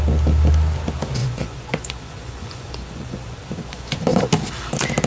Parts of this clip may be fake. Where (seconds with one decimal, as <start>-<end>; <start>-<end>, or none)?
1.2-4.3